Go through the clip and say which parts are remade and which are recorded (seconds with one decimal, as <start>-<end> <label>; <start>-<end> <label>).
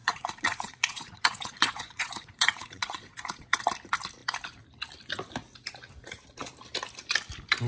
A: 0.0-3.6 remade; 3.6-7.7 recorded